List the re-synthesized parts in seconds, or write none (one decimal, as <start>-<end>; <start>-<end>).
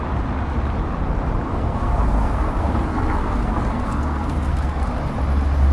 1.5-4.9